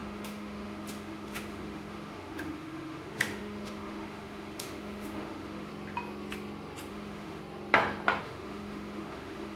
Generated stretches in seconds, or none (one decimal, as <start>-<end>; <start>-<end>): 0.0-5.7; 6.9-7.4; 8.2-9.6